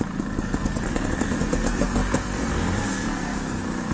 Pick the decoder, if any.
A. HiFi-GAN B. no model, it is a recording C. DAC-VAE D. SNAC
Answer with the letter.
D